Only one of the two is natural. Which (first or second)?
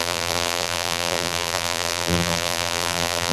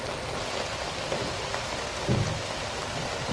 second